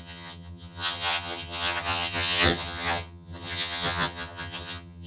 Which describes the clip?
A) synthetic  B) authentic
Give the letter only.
A